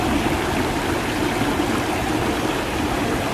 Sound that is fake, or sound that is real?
real